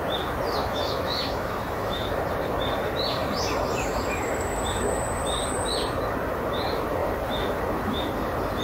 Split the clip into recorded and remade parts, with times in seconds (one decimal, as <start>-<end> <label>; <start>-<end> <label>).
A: 0.0-0.6 recorded; 0.6-2.1 remade; 2.1-8.6 recorded